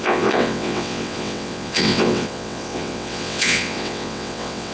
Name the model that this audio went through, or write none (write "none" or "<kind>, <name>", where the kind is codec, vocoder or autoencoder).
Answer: vocoder, WaveNeXt